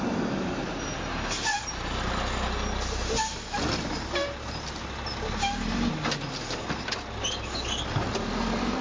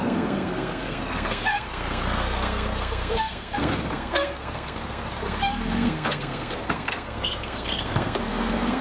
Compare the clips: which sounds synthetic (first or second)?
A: second